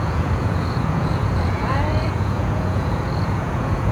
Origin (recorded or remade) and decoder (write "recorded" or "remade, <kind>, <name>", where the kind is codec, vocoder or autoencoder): remade, vocoder, Vocos